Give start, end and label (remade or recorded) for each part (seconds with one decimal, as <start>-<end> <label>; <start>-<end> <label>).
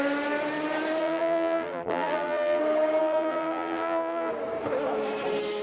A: 0.0-1.0 recorded; 1.0-2.6 remade; 2.6-3.0 recorded; 3.0-4.3 remade; 4.3-5.6 recorded